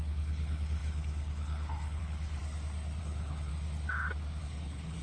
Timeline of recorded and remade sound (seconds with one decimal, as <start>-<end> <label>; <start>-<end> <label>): 0.0-2.4 remade; 2.4-3.0 recorded; 3.0-3.5 remade; 3.5-4.4 recorded; 4.4-5.0 remade